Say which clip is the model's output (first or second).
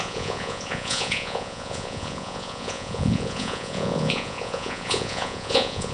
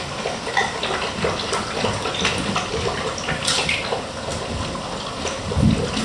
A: first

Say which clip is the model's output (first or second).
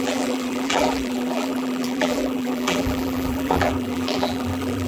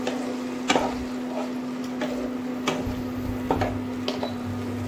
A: first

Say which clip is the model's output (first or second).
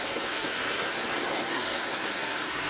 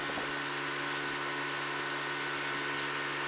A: first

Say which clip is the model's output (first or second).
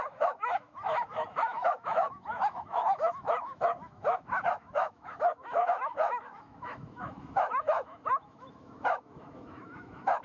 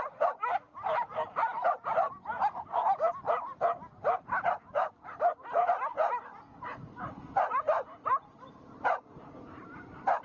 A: first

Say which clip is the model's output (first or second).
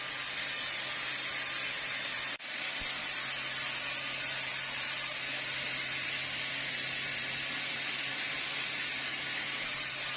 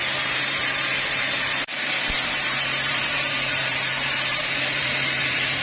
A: second